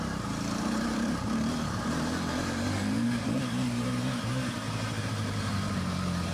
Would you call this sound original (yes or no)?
no